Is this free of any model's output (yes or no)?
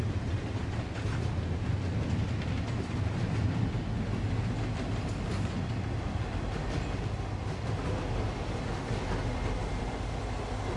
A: yes